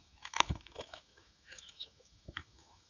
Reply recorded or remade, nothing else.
remade